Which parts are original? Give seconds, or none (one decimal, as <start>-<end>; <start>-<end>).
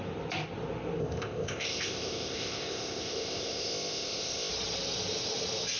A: 0.0-1.0; 4.5-5.8